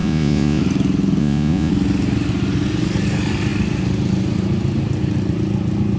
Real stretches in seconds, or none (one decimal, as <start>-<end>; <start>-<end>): 0.6-1.2; 1.7-6.0